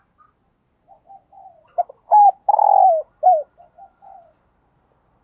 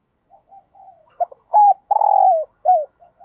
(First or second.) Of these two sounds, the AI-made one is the second